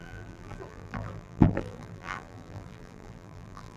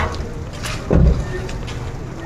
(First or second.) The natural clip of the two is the second